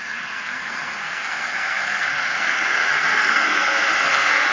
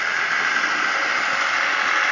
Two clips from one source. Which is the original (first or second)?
second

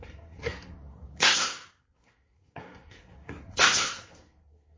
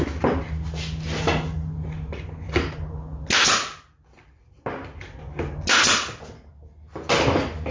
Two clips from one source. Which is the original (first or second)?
second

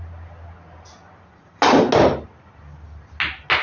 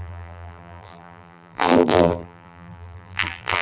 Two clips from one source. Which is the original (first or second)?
first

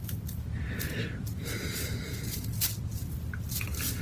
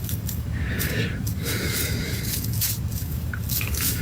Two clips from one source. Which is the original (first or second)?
first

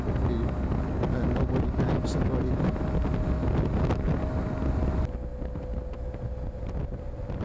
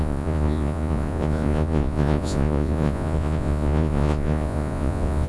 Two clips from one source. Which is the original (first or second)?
first